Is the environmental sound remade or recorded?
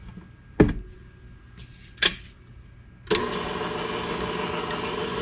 recorded